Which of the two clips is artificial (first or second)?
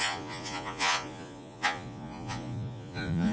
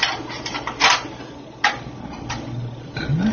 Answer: first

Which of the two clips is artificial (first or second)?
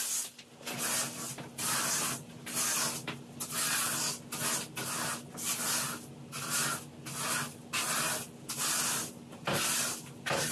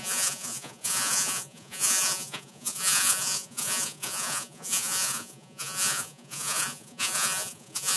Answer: second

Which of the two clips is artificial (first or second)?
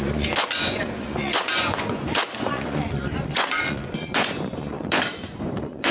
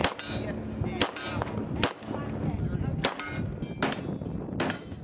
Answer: first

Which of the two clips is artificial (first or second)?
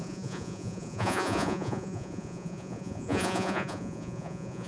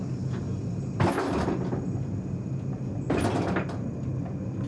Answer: first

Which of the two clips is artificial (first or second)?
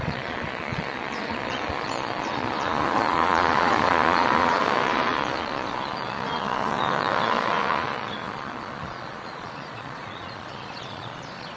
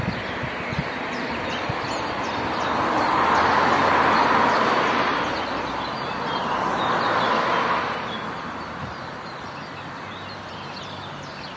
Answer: first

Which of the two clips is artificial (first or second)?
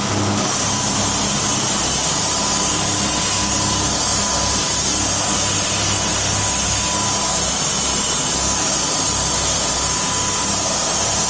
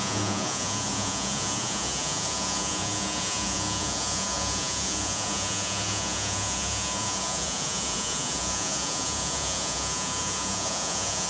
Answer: second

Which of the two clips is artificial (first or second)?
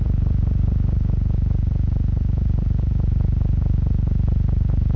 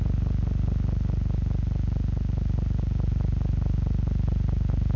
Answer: first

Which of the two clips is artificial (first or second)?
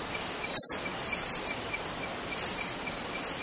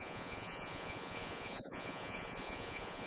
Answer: second